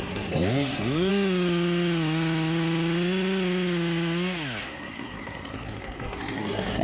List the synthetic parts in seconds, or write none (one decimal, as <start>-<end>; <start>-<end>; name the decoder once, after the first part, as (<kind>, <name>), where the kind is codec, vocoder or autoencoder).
0.0-1.1 (codec, SNAC); 4.6-6.8